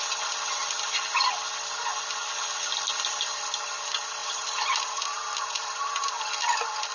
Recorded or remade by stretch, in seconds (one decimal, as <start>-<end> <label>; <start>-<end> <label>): 0.0-4.2 recorded; 4.2-6.1 remade; 6.1-6.9 recorded